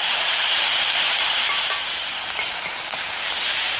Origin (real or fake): fake